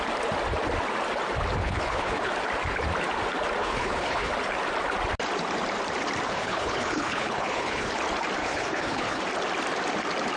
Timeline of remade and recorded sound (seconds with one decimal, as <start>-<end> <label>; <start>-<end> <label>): 0.0-1.6 recorded; 1.6-2.3 remade; 2.3-3.6 recorded; 3.6-4.3 remade; 4.3-6.3 recorded; 6.3-7.9 remade; 7.9-8.4 recorded; 8.4-9.2 remade; 9.2-10.4 recorded